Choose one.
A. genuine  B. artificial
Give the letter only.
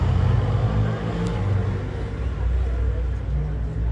A